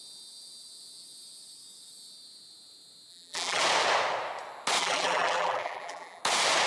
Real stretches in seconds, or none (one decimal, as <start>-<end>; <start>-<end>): 0.0-3.1; 3.6-4.8; 6.2-6.7